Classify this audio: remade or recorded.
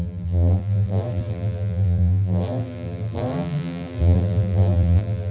remade